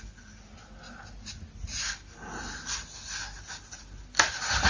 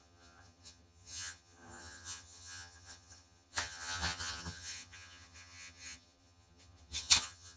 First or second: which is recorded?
first